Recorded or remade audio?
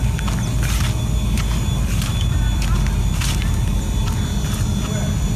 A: recorded